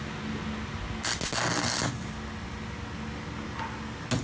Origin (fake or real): real